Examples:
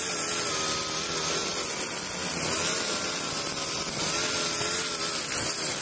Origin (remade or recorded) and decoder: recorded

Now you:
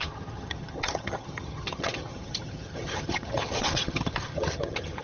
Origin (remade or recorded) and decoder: remade, vocoder, HiFi-GAN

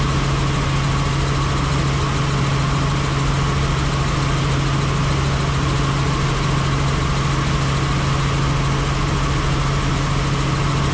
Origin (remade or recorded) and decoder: recorded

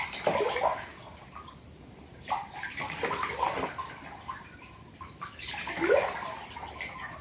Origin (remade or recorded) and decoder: recorded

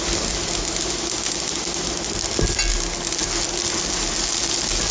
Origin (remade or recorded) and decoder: recorded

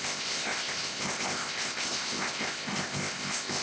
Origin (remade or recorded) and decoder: remade, codec, ZipCodec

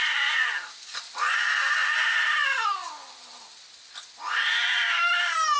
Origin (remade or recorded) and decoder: recorded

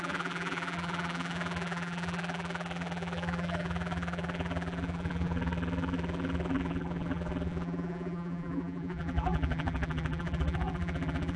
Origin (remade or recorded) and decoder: remade, vocoder, BigVGAN v2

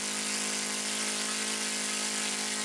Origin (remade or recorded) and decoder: recorded